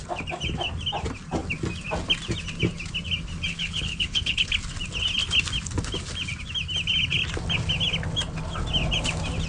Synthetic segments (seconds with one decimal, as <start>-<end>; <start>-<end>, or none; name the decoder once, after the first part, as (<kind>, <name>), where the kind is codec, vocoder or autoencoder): 3.5-4.5 (codec, HILCodec)